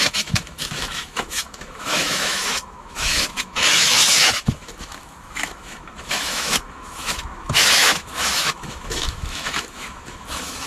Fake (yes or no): yes